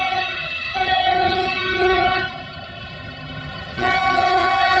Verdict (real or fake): fake